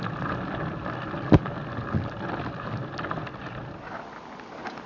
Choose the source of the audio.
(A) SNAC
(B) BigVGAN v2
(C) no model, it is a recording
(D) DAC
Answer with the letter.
C